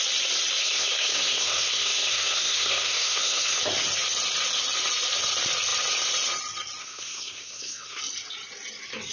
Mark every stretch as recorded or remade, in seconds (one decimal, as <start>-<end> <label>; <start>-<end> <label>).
0.0-0.6 recorded; 0.6-3.6 remade; 3.6-6.8 recorded; 6.8-8.0 remade; 8.0-9.1 recorded